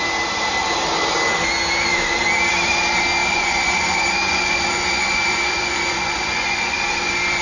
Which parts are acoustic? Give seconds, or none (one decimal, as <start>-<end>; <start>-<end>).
0.0-3.2; 6.8-7.4